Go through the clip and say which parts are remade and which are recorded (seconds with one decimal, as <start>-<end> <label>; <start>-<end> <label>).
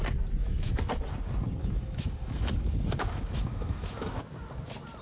0.0-0.4 recorded; 0.4-0.9 remade; 0.9-1.6 recorded; 1.6-4.2 remade; 4.2-5.0 recorded